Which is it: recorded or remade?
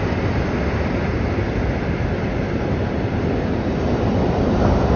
recorded